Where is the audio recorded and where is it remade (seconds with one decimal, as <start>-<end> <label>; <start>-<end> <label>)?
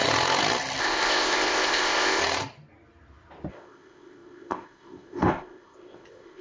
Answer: 0.0-0.8 recorded; 0.8-2.2 remade; 2.2-3.5 recorded; 3.5-6.4 remade